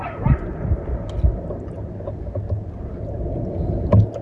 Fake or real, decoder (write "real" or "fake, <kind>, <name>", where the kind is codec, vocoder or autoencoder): real